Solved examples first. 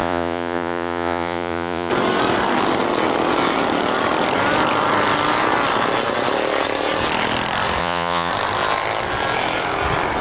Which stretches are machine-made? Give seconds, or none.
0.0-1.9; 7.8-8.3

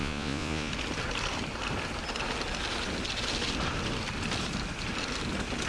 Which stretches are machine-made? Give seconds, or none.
0.0-0.7

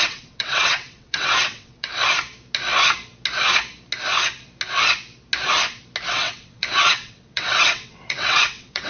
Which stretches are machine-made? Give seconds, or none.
0.0-1.9; 6.1-8.9

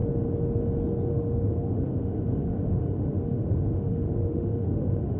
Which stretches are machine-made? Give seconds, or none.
1.1-5.2

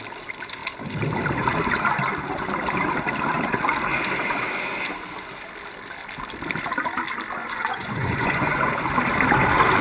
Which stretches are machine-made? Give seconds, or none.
7.4-8.8

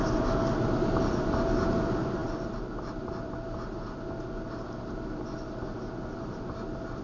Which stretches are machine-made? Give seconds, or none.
none

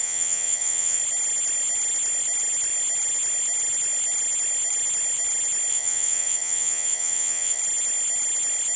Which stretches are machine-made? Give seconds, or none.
0.0-1.0; 5.7-7.6